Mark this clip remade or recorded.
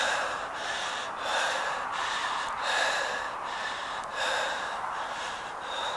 remade